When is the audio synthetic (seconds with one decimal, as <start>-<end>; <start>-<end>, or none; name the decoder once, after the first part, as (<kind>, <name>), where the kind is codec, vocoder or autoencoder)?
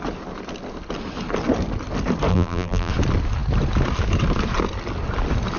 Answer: 2.3-2.9 (vocoder, BigVGAN v2)